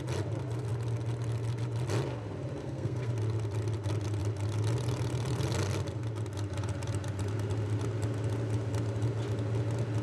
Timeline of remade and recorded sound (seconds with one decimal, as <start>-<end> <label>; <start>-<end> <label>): 0.0-2.6 recorded; 2.6-3.1 remade; 3.1-10.0 recorded